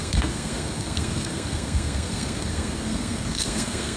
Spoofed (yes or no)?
yes